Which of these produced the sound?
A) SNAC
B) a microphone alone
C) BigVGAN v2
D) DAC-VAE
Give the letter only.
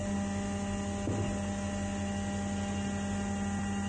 B